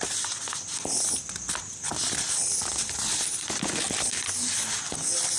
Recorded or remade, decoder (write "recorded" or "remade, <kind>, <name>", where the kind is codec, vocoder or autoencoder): recorded